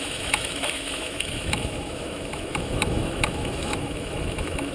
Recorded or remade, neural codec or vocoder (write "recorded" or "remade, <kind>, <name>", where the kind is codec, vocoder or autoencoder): remade, autoencoder, DAC-VAE